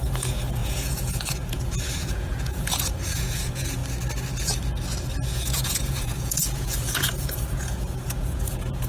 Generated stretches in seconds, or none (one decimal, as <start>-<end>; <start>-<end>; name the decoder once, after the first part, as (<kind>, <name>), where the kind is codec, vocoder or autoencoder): 0.0-3.8 (vocoder, Vocos); 5.3-8.9